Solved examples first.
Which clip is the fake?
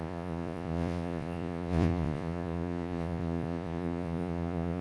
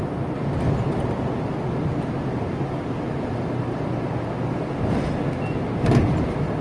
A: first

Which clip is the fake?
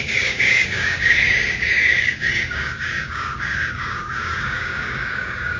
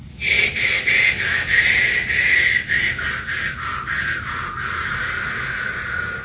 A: first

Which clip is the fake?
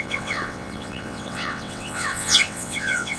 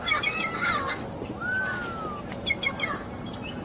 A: first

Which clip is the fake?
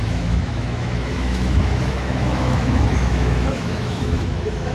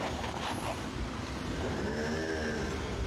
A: first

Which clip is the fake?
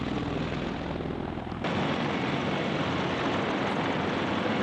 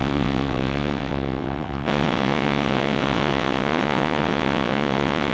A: second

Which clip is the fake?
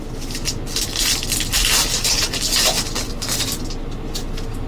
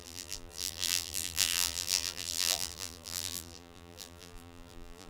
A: second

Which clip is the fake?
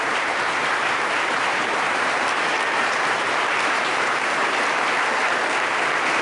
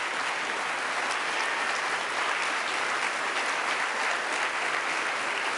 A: first